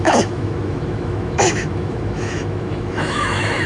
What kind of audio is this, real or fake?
fake